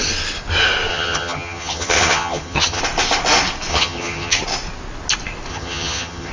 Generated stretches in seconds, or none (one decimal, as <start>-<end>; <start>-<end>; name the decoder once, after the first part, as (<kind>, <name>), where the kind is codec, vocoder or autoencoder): 0.9-2.8 (vocoder, HiFi-GAN); 3.7-4.4; 5.5-6.3